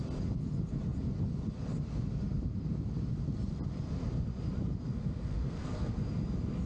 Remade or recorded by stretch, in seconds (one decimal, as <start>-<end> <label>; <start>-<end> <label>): 0.0-4.9 recorded; 4.9-6.0 remade; 6.0-6.7 recorded